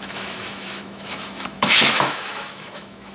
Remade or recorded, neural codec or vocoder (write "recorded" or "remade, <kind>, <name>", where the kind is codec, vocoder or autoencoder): remade, autoencoder, DAC-VAE